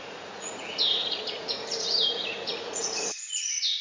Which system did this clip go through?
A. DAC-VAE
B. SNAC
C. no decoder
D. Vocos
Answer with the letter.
D